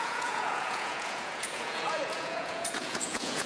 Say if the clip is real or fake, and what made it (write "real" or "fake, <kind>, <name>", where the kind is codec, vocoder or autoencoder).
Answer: fake, vocoder, Vocos